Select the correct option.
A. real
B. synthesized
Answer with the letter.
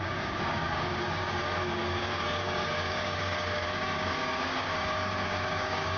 B